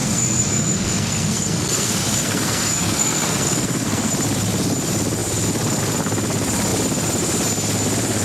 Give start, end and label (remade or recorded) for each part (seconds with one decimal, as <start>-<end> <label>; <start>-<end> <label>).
0.0-4.1 remade; 4.1-8.2 recorded